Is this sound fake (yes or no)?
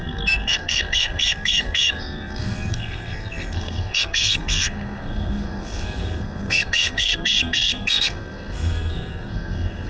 yes